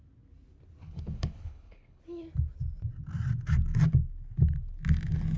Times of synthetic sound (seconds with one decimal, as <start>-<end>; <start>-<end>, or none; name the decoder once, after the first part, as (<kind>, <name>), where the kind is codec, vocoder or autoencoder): 0.8-2.0 (codec, HILCodec)

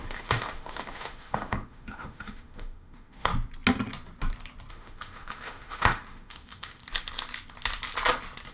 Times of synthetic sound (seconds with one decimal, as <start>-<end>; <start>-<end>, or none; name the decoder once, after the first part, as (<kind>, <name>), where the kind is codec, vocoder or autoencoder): 0.0-3.3 (autoencoder, DAC-VAE); 4.7-6.8

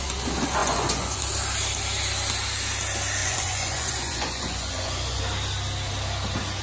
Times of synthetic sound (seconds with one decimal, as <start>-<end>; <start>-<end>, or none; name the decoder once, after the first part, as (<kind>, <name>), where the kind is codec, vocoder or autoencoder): 0.6-1.2 (vocoder, Vocos); 3.2-5.2

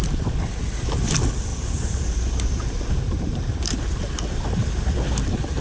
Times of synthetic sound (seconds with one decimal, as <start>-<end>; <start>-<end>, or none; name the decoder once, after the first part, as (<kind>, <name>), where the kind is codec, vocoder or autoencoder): 1.5-4.9 (vocoder, BigVGAN v2)

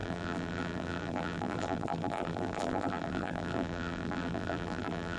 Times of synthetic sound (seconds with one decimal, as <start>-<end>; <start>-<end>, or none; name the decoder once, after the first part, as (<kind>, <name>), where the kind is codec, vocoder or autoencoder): 0.0-5.2 (vocoder, BigVGAN v2)

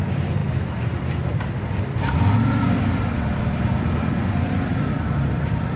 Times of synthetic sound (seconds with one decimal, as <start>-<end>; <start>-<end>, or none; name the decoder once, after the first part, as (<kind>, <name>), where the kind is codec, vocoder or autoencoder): 0.0-0.4 (vocoder, BigVGAN v2); 3.4-5.8

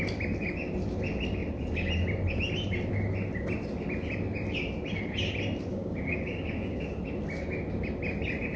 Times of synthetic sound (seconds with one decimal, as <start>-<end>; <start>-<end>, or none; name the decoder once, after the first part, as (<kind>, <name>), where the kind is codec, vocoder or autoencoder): 5.7-7.0 (codec, DAC)